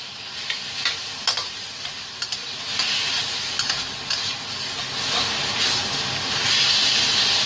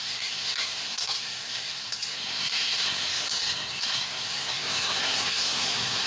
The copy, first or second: second